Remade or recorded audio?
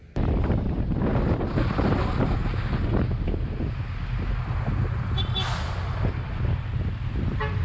recorded